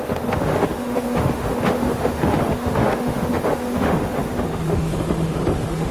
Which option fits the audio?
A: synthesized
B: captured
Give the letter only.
A